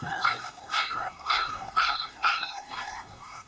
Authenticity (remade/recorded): remade